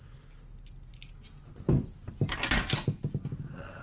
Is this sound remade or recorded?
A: recorded